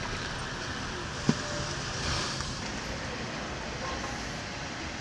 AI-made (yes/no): no